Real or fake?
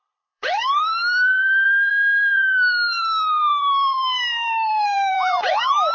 fake